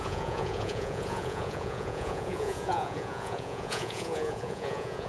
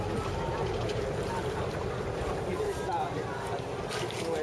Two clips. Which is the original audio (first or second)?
second